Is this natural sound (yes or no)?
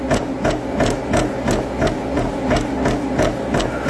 yes